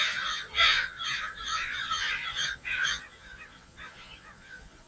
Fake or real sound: fake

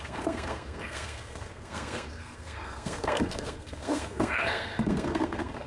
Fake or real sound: fake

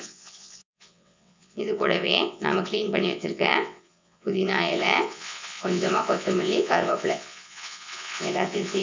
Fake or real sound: fake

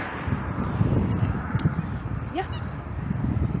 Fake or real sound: fake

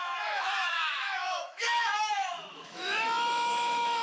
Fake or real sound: fake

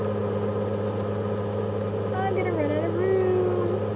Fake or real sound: real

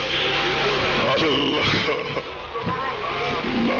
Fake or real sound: real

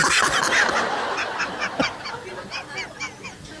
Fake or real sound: real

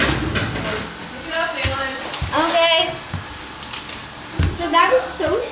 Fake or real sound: real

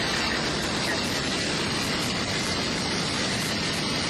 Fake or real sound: real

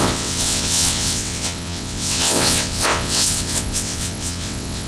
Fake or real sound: fake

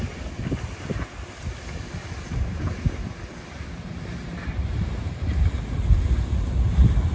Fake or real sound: real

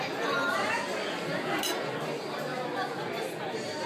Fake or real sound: real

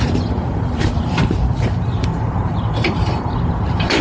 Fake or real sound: fake